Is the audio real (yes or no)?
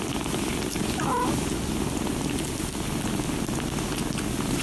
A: yes